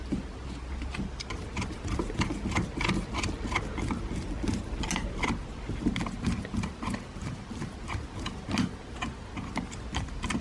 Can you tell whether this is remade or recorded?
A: recorded